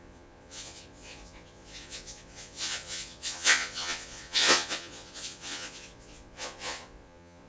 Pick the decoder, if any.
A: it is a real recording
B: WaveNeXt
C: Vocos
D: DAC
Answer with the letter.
C